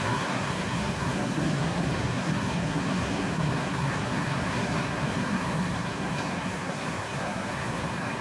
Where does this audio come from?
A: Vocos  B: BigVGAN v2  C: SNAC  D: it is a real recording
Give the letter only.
C